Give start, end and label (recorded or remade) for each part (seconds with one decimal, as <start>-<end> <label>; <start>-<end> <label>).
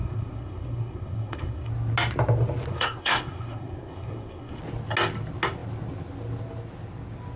0.0-1.7 remade; 1.7-2.7 recorded; 2.7-4.6 remade; 4.6-7.4 recorded